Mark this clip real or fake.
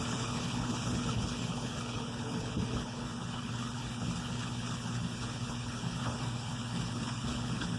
fake